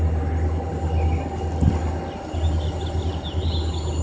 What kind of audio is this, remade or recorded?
recorded